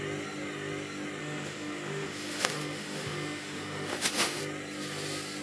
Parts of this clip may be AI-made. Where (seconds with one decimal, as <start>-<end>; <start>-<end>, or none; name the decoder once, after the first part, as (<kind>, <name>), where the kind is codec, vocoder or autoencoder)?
1.2-4.4 (autoencoder, DAC-VAE)